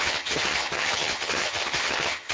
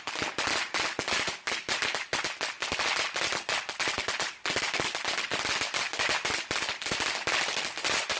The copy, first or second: first